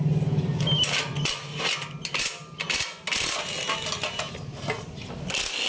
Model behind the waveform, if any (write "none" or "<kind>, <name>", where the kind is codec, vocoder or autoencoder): none